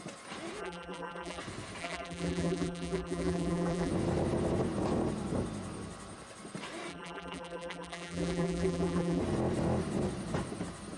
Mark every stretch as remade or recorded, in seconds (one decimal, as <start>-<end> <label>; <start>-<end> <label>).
0.0-0.6 recorded; 0.6-1.4 remade; 1.4-1.8 recorded; 1.8-3.9 remade; 3.9-6.9 recorded; 6.9-9.2 remade; 9.2-11.0 recorded